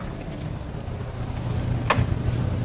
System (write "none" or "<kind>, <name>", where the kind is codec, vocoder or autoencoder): none